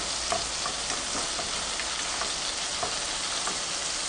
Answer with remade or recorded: recorded